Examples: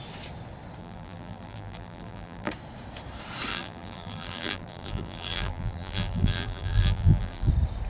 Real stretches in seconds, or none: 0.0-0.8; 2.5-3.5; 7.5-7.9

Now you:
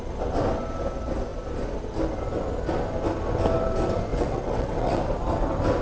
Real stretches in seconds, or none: 0.0-4.1; 5.0-5.8